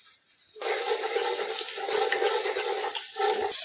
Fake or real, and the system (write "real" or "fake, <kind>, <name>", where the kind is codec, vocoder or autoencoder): real